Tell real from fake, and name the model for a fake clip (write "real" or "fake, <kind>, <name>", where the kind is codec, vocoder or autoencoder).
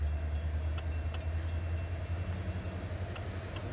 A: real